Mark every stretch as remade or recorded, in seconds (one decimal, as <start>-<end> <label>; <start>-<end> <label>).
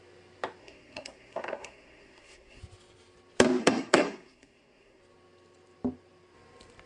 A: 0.0-0.6 recorded; 0.6-2.6 remade; 2.6-3.6 recorded; 3.6-5.0 remade; 5.0-6.9 recorded